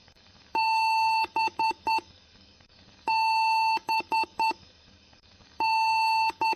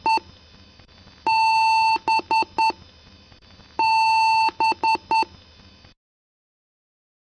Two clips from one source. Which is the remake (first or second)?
first